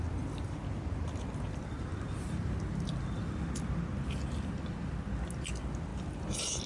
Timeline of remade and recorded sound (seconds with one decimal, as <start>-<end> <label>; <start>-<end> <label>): 0.0-6.7 recorded